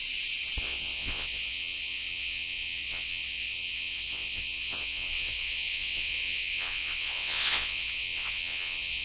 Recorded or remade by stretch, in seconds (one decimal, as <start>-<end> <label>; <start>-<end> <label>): 0.0-0.6 recorded; 0.6-9.0 remade